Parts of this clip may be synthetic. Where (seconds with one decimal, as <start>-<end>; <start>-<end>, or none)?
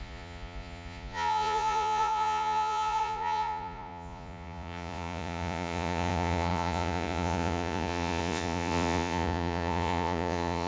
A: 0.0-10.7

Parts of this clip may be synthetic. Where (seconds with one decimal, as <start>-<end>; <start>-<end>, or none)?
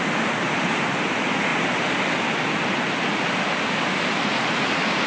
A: none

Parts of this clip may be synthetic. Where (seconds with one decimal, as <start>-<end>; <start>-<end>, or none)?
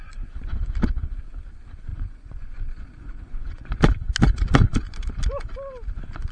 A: 1.9-3.7